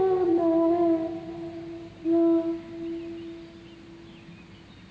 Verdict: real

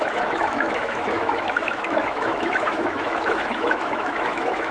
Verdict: fake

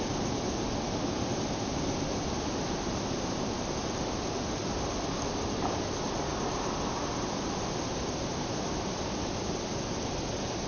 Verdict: real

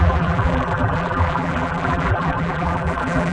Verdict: fake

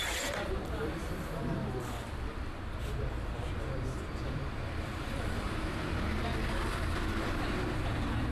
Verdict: fake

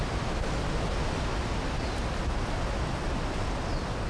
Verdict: real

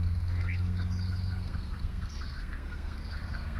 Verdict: fake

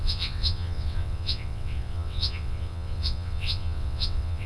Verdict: fake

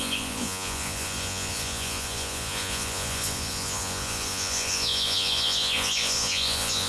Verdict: fake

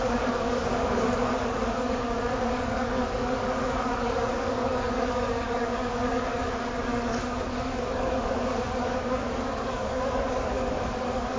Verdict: fake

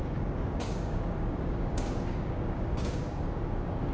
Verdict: fake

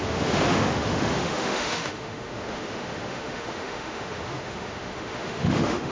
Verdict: fake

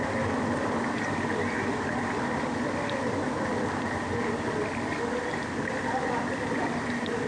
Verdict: real